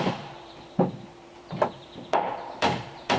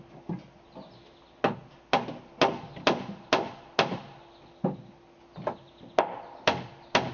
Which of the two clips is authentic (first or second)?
second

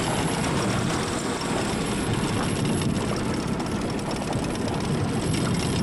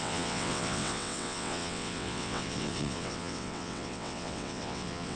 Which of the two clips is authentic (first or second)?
first